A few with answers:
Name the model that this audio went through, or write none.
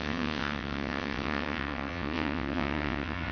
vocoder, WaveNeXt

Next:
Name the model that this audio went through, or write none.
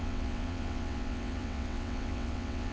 vocoder, WaveNeXt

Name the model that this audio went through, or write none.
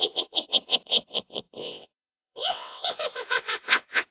vocoder, WaveNeXt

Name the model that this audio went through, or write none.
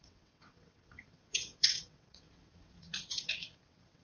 vocoder, WaveNeXt